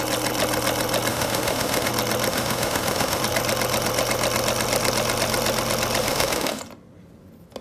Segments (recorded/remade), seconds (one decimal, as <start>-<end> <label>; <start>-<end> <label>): 0.0-1.1 recorded; 1.1-1.9 remade; 1.9-2.3 recorded; 2.3-3.2 remade; 3.2-6.0 recorded; 6.0-6.6 remade; 6.6-7.6 recorded